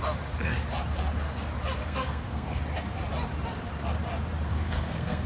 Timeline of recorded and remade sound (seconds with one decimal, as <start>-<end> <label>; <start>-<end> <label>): 0.0-1.8 recorded; 1.8-2.6 remade; 2.6-4.5 recorded; 4.5-5.3 remade